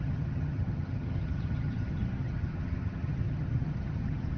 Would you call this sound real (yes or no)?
no